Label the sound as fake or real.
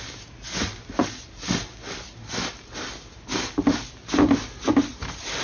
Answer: real